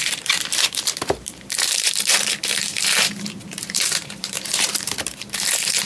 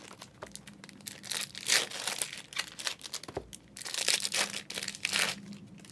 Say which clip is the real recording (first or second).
second